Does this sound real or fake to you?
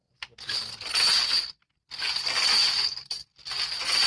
real